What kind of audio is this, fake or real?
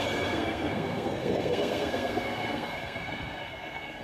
fake